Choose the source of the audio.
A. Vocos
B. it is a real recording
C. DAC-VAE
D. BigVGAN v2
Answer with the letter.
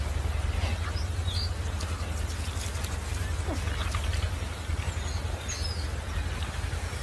B